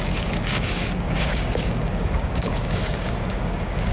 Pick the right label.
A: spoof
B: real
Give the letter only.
A